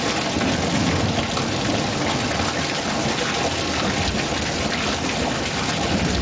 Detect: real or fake real